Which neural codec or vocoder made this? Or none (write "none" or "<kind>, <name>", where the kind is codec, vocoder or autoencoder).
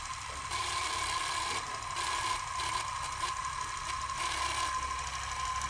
none